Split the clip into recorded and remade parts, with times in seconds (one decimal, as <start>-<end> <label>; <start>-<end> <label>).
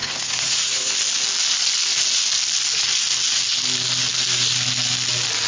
0.0-0.9 remade; 0.9-5.5 recorded